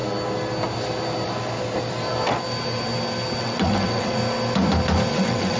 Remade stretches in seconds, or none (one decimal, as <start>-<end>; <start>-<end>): 3.4-4.2; 5.1-5.6